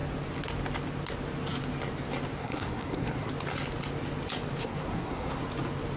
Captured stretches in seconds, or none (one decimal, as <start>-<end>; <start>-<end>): 0.0-2.4; 3.3-4.6; 5.4-6.0